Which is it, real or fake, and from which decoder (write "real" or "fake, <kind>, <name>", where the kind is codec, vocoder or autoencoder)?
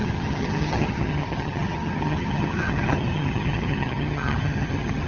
fake, vocoder, HiFi-GAN